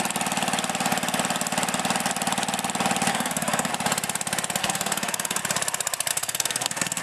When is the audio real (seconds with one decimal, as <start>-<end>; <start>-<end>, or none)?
0.0-3.1; 3.7-4.6; 5.4-6.1